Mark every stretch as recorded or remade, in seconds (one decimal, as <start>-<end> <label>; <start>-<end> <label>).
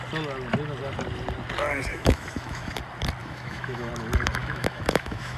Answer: 0.0-1.9 recorded; 1.9-2.7 remade; 2.7-3.2 recorded; 3.2-3.9 remade; 3.9-4.4 recorded; 4.4-5.4 remade